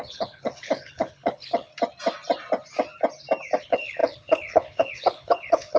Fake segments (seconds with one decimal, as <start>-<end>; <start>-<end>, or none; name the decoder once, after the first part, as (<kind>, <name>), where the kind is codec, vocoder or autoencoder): 0.0-1.7 (codec, HILCodec); 3.6-5.8